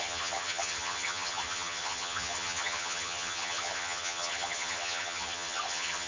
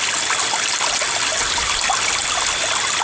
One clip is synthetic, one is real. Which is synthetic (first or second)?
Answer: first